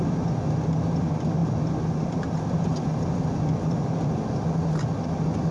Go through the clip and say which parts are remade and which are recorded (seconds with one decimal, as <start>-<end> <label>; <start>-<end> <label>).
0.0-5.5 recorded